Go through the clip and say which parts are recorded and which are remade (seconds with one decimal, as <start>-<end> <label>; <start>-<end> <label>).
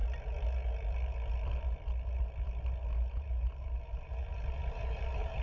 0.0-3.2 recorded; 3.2-5.4 remade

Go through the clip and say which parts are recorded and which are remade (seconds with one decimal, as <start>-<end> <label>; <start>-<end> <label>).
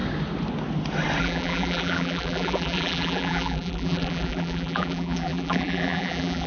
0.0-1.2 recorded; 1.2-6.5 remade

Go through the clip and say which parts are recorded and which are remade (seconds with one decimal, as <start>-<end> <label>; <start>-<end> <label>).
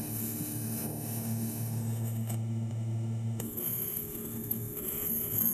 0.0-5.5 remade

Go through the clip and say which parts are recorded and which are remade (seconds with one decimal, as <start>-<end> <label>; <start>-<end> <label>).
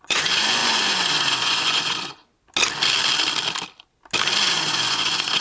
0.0-2.2 remade; 2.2-4.5 recorded; 4.5-5.4 remade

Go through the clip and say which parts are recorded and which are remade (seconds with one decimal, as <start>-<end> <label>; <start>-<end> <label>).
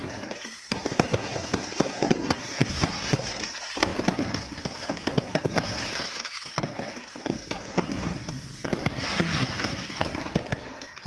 0.0-11.1 remade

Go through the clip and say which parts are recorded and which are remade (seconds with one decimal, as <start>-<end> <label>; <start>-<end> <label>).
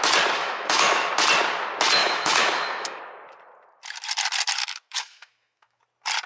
0.0-0.4 recorded; 0.4-1.1 remade; 1.1-2.0 recorded; 2.0-3.0 remade; 3.0-4.6 recorded; 4.6-5.8 remade; 5.8-6.3 recorded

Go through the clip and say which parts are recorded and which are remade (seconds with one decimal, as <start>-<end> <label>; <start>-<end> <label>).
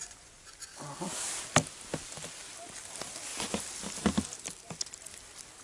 0.0-0.8 remade; 0.8-5.6 recorded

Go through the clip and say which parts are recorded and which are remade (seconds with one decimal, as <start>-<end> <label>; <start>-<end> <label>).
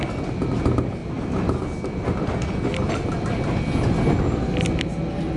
0.0-5.4 recorded